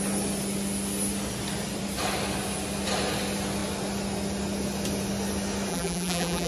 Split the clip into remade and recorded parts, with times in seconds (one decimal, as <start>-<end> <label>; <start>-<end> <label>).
0.0-5.7 recorded; 5.7-6.5 remade